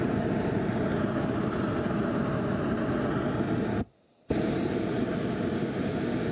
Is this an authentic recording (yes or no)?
yes